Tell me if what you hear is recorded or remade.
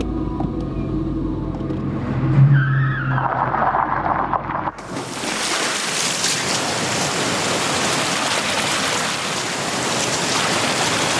recorded